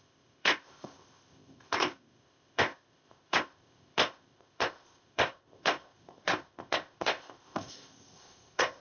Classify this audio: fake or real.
fake